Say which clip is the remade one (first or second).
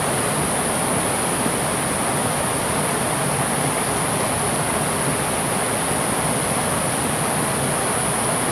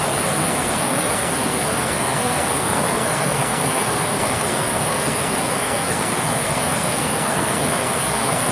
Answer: second